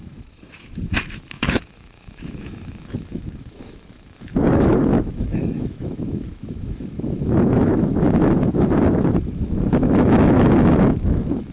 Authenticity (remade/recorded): remade